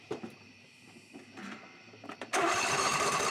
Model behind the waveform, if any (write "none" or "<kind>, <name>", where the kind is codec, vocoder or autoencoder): vocoder, BigVGAN v2